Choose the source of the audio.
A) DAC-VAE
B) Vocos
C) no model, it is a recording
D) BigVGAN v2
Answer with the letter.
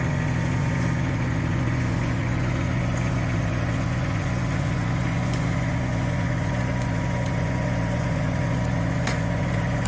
B